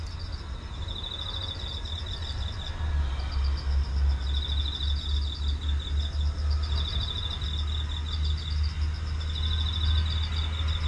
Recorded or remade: recorded